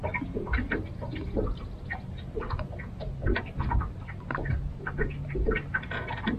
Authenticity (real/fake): real